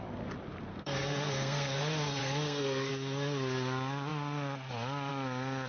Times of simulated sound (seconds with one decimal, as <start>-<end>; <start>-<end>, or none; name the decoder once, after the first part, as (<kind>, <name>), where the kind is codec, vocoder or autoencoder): 0.7-1.8 (codec, SNAC); 2.2-2.9